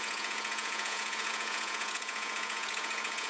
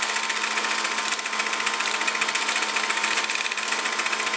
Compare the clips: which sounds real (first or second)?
second